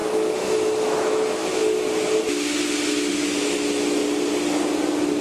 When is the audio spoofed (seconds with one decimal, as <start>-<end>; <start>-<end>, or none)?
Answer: 0.0-1.6; 3.1-4.0